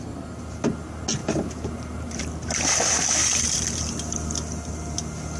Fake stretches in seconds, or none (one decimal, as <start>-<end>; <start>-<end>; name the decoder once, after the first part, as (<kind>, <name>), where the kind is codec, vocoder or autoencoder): 1.2-2.2 (vocoder, BigVGAN v2); 3.2-3.8